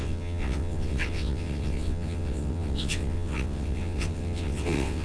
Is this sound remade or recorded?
remade